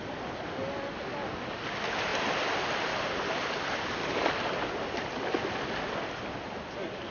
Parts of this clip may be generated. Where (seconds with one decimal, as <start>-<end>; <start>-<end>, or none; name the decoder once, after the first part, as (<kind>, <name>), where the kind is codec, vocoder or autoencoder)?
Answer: none